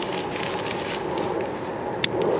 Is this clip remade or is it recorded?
recorded